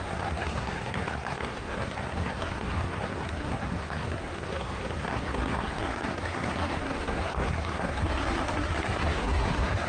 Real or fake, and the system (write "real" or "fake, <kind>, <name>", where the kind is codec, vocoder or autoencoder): fake, codec, SNAC